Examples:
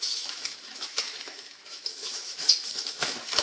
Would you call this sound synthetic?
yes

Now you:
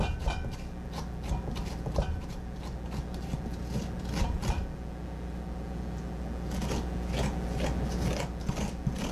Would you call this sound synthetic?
no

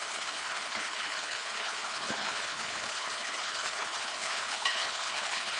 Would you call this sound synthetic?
yes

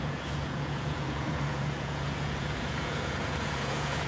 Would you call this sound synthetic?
yes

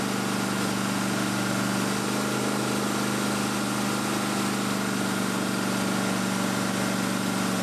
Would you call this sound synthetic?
no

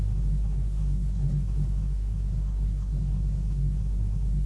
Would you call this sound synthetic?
yes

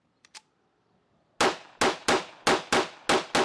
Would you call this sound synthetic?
no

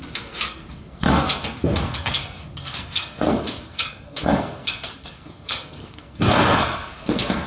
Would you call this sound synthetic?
yes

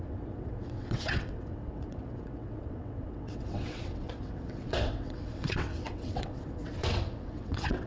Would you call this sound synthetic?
yes